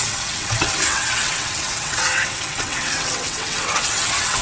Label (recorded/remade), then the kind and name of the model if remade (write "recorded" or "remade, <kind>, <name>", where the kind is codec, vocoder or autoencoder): remade, vocoder, WaveNeXt